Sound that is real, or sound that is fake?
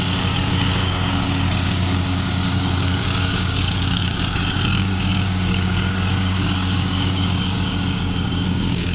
fake